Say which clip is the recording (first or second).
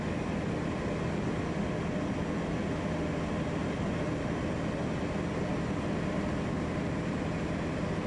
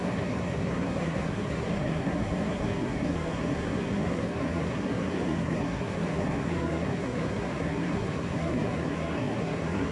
first